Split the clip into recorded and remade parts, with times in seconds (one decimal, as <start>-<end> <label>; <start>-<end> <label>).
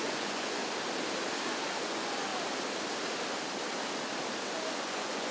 0.0-0.6 remade; 0.6-1.8 recorded; 1.8-2.3 remade; 2.3-4.7 recorded; 4.7-5.3 remade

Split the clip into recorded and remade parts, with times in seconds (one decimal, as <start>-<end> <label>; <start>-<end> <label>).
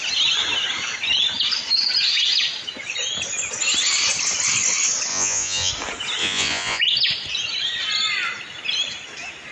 0.0-5.1 recorded; 5.1-5.7 remade; 5.7-6.2 recorded; 6.2-6.8 remade; 6.8-9.5 recorded